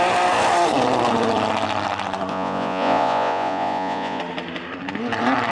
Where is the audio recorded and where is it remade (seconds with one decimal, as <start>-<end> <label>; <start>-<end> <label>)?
0.0-2.3 recorded; 2.3-4.2 remade; 4.2-5.5 recorded